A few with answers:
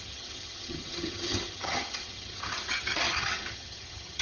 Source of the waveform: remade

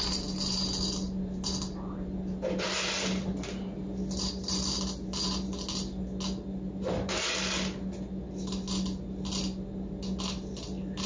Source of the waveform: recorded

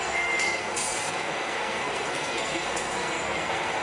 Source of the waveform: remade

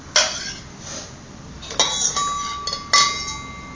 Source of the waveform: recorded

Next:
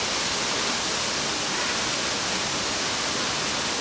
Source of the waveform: recorded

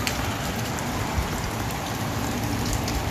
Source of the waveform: recorded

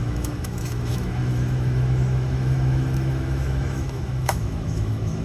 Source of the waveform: remade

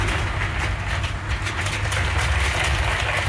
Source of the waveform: recorded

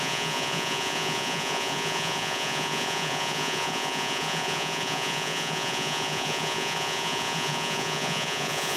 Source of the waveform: remade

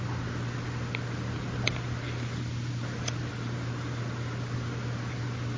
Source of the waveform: recorded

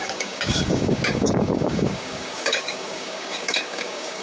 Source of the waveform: remade